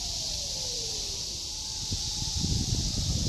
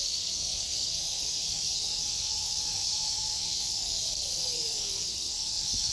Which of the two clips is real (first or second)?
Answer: first